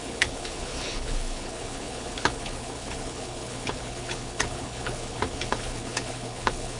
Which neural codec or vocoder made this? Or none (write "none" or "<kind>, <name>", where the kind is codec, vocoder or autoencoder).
codec, HILCodec